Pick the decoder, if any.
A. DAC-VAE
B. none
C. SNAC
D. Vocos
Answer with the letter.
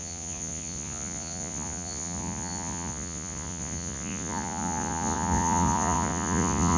D